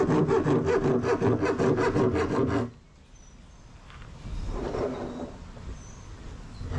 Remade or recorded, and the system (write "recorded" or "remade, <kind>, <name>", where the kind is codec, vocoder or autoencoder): recorded